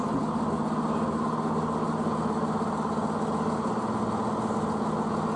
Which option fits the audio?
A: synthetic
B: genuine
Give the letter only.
B